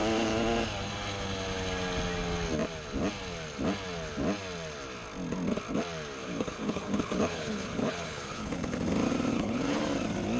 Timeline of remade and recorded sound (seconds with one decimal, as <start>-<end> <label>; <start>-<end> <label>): 0.0-6.2 recorded; 6.2-8.8 remade; 8.8-9.3 recorded; 9.3-9.8 remade; 9.8-10.4 recorded